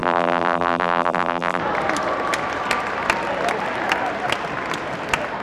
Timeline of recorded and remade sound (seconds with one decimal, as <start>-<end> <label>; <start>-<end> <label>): 0.0-1.6 remade; 1.6-5.4 recorded